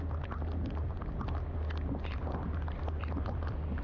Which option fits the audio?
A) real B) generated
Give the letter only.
A